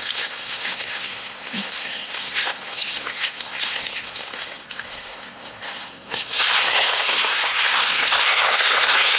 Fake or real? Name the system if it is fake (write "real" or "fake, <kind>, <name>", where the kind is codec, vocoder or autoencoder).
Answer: fake, codec, SNAC